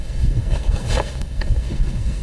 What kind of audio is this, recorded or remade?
remade